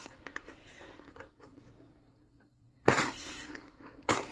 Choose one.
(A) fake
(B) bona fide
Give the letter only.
A